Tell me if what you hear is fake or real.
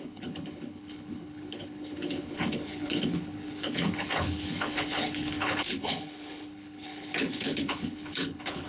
fake